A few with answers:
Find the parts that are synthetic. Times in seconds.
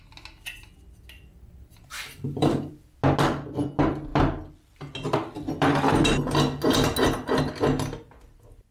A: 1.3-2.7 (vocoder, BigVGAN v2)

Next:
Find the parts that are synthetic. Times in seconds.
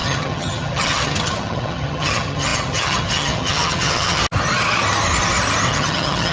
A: 0.0-4.2 (vocoder, HiFi-GAN); 5.7-6.3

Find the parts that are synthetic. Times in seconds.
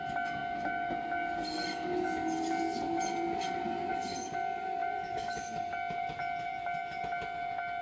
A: 4.8-5.6 (vocoder, BigVGAN v2)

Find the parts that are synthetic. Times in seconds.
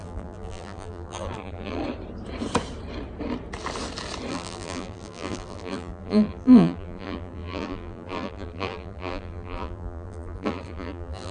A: 0.0-1.8 (vocoder, BigVGAN v2); 4.3-11.3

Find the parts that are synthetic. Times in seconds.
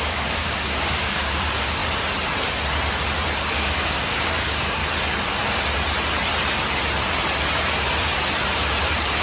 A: 0.0-1.8 (codec, DAC); 3.5-4.8